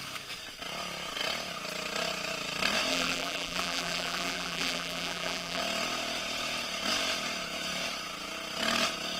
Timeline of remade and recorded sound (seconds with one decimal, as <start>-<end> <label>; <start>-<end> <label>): 0.0-2.9 recorded; 2.9-5.6 remade; 5.6-9.2 recorded